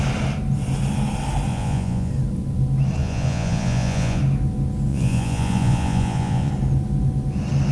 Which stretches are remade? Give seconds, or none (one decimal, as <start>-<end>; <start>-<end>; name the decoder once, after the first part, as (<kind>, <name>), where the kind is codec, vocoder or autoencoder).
1.5-2.1 (vocoder, Vocos); 3.0-4.2; 4.9-6.5